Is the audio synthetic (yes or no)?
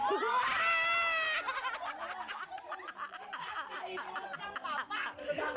no